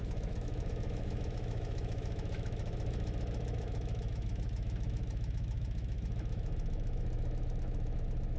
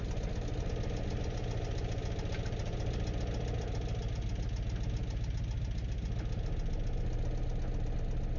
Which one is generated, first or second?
first